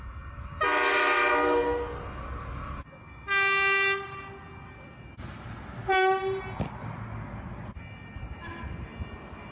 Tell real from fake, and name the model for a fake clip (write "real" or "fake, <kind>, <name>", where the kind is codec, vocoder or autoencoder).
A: real